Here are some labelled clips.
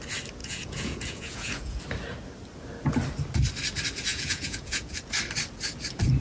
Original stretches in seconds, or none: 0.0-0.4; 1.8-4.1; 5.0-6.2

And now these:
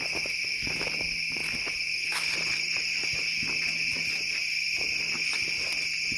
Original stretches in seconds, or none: 0.0-6.2